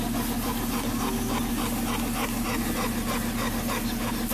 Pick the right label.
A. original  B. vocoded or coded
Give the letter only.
A